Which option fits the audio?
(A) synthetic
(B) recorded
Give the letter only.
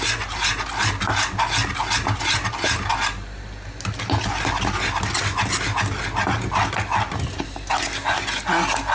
B